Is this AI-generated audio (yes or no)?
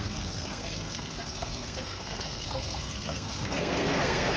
yes